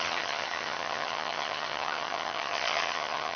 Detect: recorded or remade remade